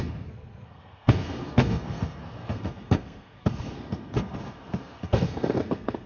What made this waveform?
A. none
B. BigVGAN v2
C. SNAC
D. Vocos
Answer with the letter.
C